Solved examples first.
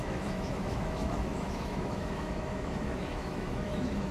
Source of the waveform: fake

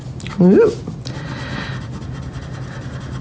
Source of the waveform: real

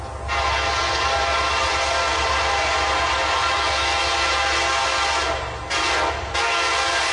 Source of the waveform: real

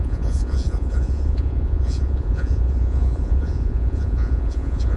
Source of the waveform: fake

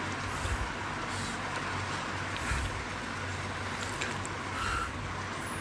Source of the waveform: real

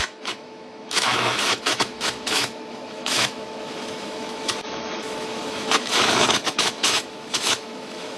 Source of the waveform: fake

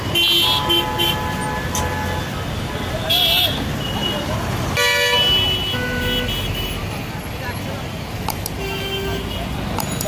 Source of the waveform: real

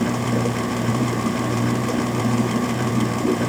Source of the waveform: fake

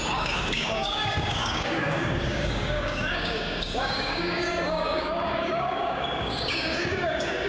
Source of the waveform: fake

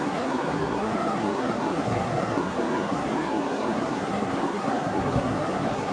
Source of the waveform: fake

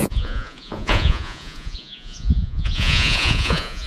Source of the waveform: fake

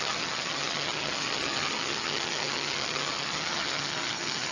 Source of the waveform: fake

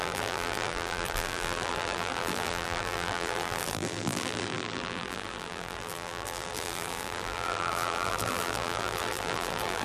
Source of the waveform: fake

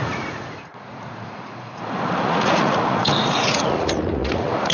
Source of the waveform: fake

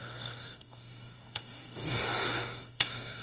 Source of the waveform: fake